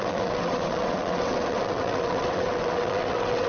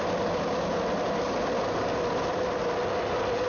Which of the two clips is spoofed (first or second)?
first